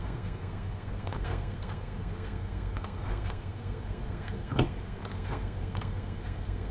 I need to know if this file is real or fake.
fake